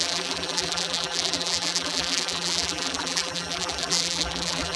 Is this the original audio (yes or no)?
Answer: no